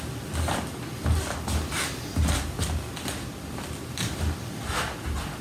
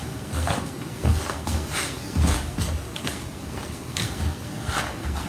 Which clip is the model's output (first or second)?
second